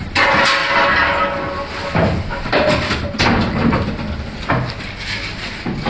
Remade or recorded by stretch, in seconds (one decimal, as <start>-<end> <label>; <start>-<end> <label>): 0.0-5.9 recorded